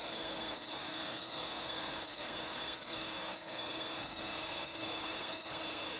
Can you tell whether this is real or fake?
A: fake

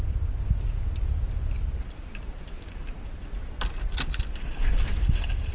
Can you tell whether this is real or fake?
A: real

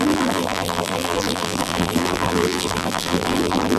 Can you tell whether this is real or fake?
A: fake